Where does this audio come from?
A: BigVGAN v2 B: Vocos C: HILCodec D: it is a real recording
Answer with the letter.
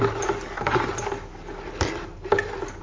D